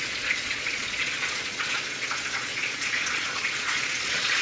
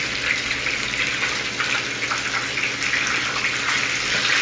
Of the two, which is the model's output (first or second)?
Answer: first